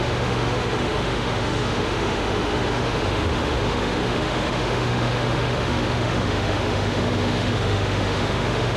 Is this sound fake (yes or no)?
yes